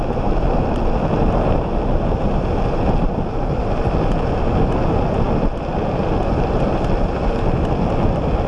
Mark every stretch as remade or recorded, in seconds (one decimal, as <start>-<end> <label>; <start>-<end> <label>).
0.0-8.5 recorded